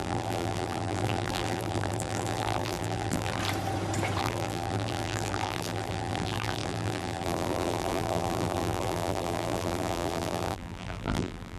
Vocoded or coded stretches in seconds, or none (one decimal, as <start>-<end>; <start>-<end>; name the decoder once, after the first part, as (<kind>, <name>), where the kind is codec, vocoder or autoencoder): 0.0-3.4 (vocoder, BigVGAN v2); 4.2-11.6